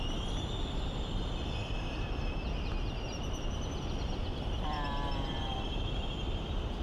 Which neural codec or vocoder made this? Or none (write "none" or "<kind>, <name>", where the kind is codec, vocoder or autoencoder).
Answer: vocoder, BigVGAN v2